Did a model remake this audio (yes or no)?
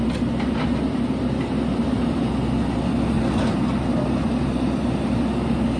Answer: no